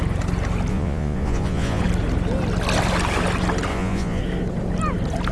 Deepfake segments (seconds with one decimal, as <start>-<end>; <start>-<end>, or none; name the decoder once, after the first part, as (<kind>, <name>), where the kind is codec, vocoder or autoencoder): 0.7-1.8 (vocoder, Vocos); 3.7-4.2